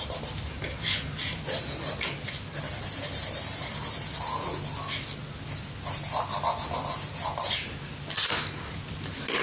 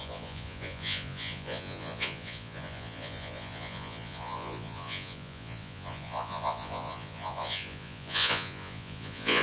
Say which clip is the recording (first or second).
first